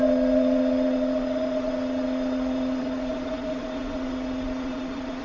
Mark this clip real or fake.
fake